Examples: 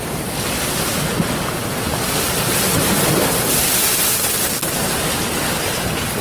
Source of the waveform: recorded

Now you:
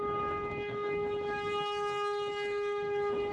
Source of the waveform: remade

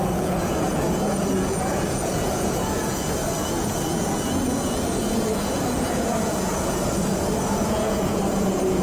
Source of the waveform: remade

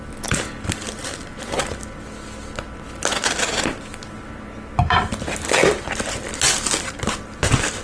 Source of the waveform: recorded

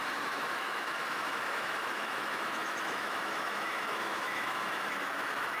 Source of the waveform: remade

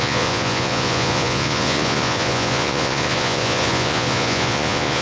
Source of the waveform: remade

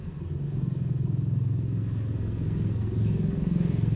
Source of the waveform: remade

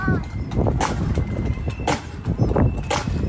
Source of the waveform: recorded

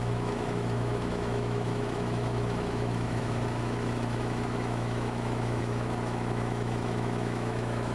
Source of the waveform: remade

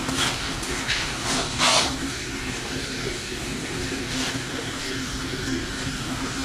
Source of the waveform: remade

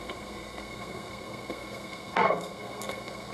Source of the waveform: remade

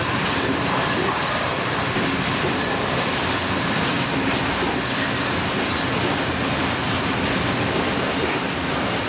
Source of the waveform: recorded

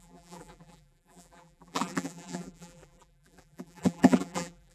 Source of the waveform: remade